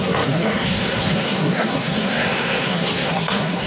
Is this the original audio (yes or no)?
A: no